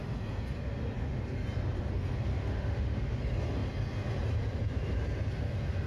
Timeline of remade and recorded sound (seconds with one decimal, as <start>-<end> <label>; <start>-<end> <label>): 0.0-2.3 recorded; 2.3-3.2 remade; 3.2-5.9 recorded